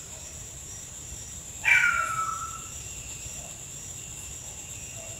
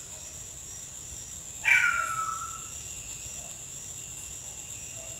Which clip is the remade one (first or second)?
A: first